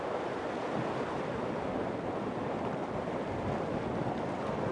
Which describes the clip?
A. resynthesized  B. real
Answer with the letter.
B